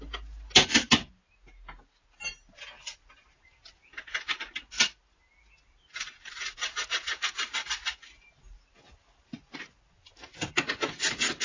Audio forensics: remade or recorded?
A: recorded